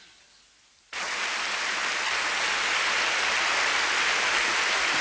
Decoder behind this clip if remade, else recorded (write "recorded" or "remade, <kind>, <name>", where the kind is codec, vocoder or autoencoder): recorded